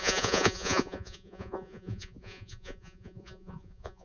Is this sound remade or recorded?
remade